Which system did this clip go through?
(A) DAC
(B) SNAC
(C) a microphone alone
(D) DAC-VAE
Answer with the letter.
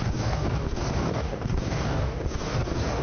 A